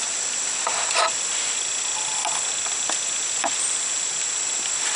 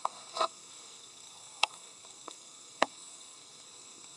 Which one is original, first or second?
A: first